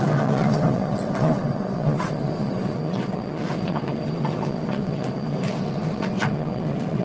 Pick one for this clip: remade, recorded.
remade